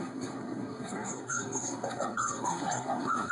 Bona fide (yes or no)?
no